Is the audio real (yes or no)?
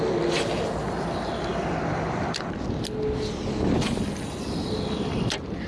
yes